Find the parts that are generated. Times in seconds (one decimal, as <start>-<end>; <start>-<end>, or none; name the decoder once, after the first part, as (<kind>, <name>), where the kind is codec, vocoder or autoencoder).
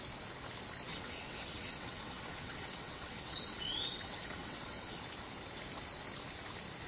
0.9-5.0 (vocoder, WaveNeXt)